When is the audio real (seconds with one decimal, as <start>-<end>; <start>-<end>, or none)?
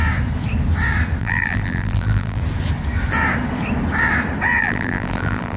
0.0-1.2; 2.4-4.6